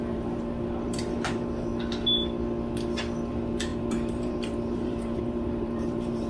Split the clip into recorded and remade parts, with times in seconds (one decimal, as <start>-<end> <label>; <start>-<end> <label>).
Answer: 0.0-1.7 remade; 1.7-3.3 recorded; 3.3-6.3 remade